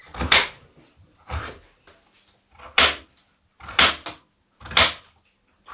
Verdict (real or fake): real